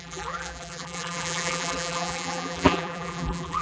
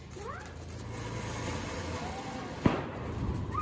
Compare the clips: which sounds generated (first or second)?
first